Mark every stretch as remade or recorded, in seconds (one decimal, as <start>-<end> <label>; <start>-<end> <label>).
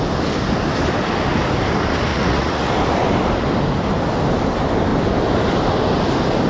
0.0-2.1 recorded; 2.1-2.7 remade; 2.7-6.5 recorded